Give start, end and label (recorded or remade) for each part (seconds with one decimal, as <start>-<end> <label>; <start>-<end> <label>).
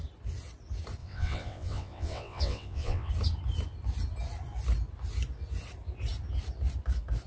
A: 0.0-1.0 recorded; 1.0-3.1 remade; 3.1-7.3 recorded